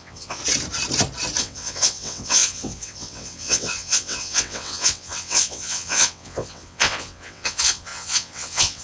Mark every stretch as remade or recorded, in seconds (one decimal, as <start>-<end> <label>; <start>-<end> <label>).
0.0-0.4 remade; 0.4-1.4 recorded; 1.4-8.8 remade